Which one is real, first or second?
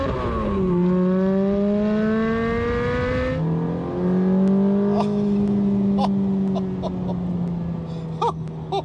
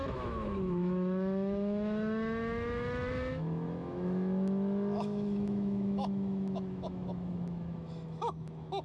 first